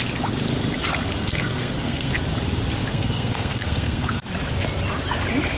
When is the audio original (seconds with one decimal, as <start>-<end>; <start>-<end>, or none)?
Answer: 0.0-1.2; 2.1-2.9; 4.2-5.6